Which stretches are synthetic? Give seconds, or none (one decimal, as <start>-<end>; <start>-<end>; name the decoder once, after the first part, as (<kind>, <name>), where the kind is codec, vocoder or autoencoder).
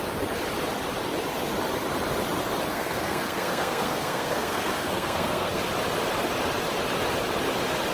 2.7-5.6 (codec, SNAC)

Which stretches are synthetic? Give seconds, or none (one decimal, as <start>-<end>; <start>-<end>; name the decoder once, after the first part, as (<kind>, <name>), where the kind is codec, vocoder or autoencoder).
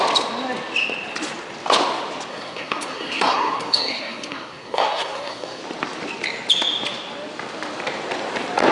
2.3-5.6 (codec, SNAC)